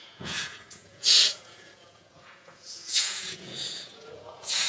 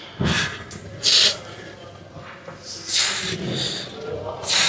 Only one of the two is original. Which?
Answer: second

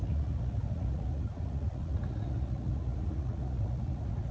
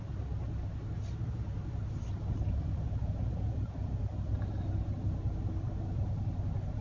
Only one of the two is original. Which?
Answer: second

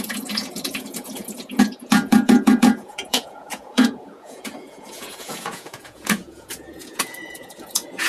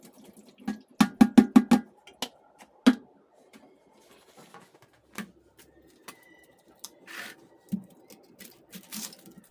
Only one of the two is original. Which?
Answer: second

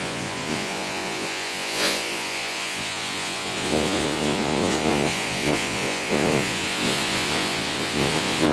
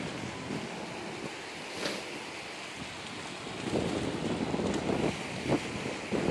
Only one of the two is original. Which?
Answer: second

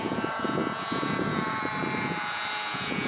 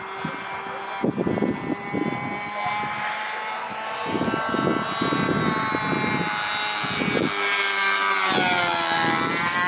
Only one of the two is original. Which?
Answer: second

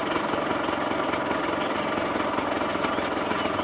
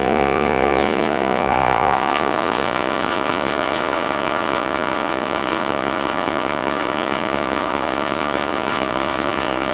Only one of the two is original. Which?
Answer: first